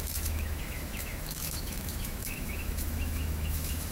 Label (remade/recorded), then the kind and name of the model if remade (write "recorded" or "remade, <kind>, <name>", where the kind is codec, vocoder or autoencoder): remade, autoencoder, DAC-VAE